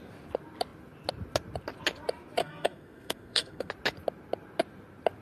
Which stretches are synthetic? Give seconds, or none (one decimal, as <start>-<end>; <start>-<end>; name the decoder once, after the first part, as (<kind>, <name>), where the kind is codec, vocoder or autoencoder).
2.4-3.7 (codec, SNAC)

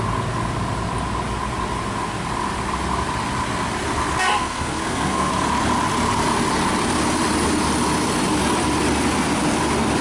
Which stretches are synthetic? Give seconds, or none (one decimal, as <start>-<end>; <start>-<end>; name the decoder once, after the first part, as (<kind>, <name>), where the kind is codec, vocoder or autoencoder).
4.2-5.3 (codec, SNAC)

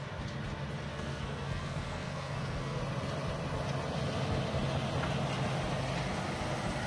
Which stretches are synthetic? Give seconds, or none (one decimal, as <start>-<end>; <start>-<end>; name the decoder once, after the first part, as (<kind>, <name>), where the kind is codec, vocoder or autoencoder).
0.9-2.8 (codec, SNAC)

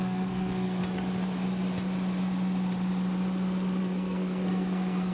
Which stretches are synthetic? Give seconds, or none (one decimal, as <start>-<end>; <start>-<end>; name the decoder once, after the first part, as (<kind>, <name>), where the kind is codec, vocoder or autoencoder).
0.0-0.8 (codec, SNAC); 3.8-5.1

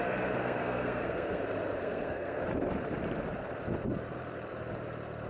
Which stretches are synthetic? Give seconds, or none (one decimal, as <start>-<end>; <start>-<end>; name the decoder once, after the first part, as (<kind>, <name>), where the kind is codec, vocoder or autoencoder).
0.4-1.4 (codec, SNAC); 1.8-2.4

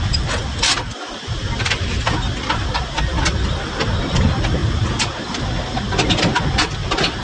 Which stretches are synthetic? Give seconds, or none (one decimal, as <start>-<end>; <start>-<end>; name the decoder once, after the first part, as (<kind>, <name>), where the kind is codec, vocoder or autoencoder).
none

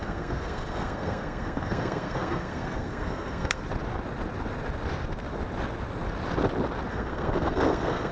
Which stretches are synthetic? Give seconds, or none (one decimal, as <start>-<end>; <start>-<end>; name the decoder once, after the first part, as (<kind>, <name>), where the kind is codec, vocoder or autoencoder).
0.0-3.6 (codec, SNAC); 6.9-8.1

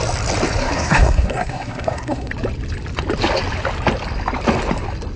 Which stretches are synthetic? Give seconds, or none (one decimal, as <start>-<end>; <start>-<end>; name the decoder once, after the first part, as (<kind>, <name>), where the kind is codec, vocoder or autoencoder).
0.6-2.3 (codec, SNAC)